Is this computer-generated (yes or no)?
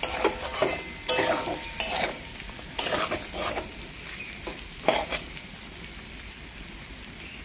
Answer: no